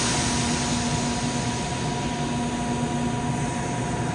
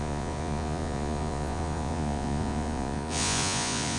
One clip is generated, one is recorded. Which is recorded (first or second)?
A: first